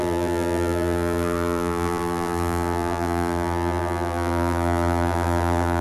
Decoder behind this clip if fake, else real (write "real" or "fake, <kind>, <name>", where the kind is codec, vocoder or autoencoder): fake, vocoder, BigVGAN v2